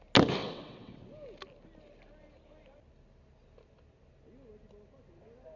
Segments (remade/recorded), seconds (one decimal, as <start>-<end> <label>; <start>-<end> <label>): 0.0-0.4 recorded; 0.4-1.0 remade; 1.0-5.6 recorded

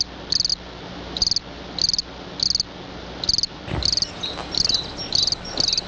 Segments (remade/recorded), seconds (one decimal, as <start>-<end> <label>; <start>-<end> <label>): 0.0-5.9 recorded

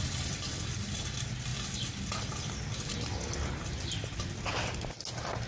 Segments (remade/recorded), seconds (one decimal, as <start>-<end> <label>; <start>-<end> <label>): 0.0-5.5 recorded

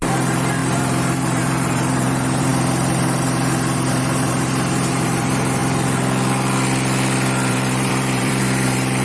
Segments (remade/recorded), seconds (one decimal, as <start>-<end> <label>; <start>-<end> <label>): 0.0-5.6 remade; 5.6-7.5 recorded; 7.5-9.0 remade

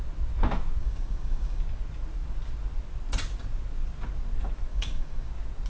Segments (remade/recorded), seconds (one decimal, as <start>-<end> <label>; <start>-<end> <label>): 0.0-0.8 recorded; 0.8-1.6 remade; 1.6-4.7 recorded; 4.7-5.3 remade; 5.3-5.7 recorded